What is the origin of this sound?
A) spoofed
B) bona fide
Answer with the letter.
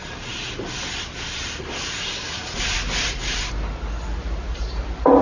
B